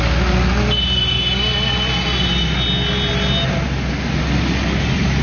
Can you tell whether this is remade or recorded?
recorded